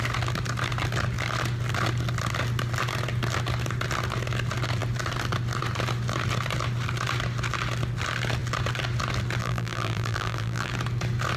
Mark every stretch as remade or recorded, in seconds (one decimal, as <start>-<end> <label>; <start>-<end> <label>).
0.0-9.4 recorded; 9.4-10.7 remade; 10.7-11.4 recorded